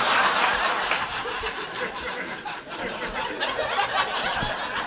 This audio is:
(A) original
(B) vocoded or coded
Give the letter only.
A